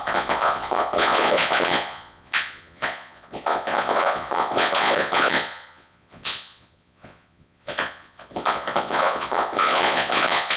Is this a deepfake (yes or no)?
yes